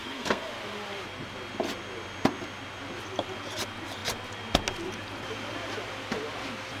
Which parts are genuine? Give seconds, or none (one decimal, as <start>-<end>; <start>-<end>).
0.5-6.8

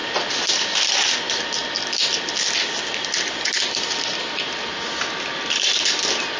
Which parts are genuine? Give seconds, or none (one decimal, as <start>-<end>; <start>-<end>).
0.0-6.4

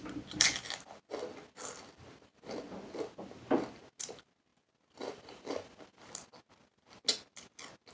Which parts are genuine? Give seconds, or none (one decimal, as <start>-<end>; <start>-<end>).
0.0-7.9

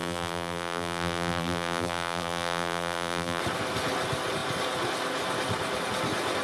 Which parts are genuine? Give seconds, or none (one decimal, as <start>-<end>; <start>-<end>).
3.4-6.4